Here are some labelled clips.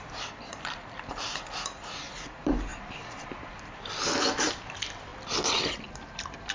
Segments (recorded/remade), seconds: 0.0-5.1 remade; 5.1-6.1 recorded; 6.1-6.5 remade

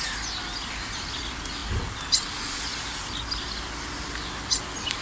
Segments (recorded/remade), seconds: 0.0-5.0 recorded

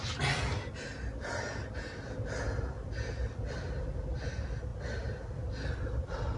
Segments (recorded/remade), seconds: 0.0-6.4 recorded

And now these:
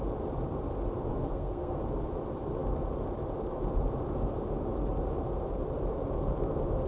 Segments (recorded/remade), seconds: 0.0-1.1 recorded; 1.1-1.8 remade; 1.8-6.9 recorded

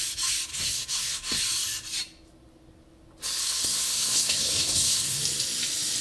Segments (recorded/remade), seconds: 0.0-0.5 recorded; 0.5-1.4 remade; 1.4-3.4 recorded; 3.4-5.2 remade; 5.2-6.0 recorded

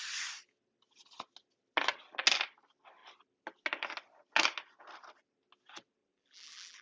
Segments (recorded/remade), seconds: 0.0-6.0 recorded; 6.0-6.8 remade